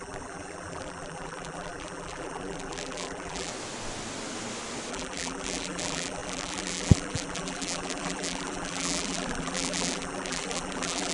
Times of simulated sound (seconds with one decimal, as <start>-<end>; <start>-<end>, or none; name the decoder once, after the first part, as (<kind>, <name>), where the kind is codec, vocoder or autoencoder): 0.0-3.5 (vocoder, BigVGAN v2); 4.9-11.1